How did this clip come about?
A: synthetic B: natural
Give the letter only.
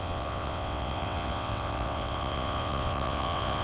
A